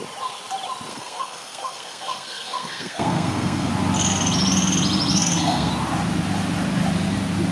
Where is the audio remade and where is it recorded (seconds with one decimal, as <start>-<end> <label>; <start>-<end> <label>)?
0.0-0.9 recorded; 0.9-3.7 remade; 3.7-5.1 recorded; 5.1-5.7 remade; 5.7-7.5 recorded

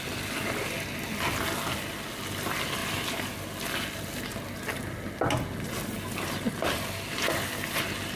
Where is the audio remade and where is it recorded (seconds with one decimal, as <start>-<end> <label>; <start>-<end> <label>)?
0.0-8.2 recorded

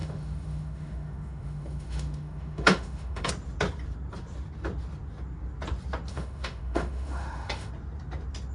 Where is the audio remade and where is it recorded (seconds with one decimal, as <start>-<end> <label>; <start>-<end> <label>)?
0.0-3.3 remade; 3.3-6.1 recorded; 6.1-7.7 remade; 7.7-8.5 recorded

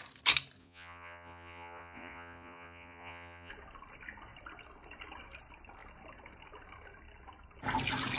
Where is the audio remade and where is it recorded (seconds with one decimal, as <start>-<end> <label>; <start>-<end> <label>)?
0.0-0.6 recorded; 0.6-3.5 remade; 3.5-8.2 recorded

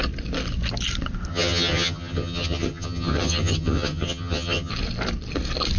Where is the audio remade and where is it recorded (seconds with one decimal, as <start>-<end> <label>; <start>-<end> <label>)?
0.0-1.3 recorded; 1.3-4.7 remade; 4.7-5.8 recorded

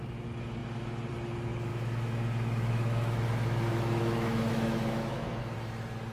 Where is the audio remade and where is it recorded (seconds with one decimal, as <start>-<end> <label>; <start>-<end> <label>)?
0.0-1.7 recorded; 1.7-5.4 remade; 5.4-6.1 recorded